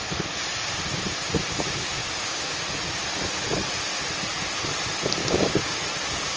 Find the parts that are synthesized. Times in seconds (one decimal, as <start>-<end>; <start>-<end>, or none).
2.0-2.6; 5.2-5.8